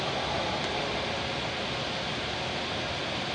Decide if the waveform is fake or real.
real